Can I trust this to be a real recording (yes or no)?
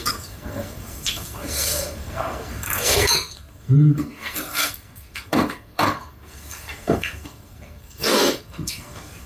no